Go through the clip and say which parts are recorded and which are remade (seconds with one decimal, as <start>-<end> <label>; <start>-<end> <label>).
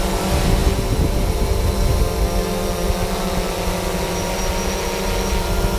0.0-5.8 recorded